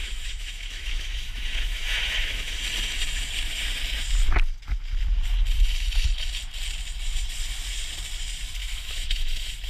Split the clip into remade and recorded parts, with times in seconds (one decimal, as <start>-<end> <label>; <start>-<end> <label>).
0.0-2.6 remade; 2.6-8.6 recorded; 8.6-9.7 remade